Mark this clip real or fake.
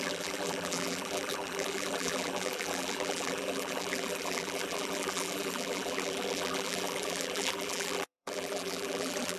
fake